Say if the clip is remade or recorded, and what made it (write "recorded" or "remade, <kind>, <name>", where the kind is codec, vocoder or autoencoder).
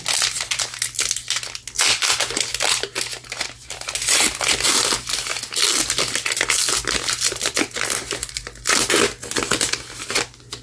recorded